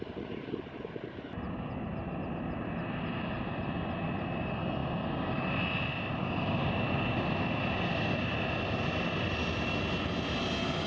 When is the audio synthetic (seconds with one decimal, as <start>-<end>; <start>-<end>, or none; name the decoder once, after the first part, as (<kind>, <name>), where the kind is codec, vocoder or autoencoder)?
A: none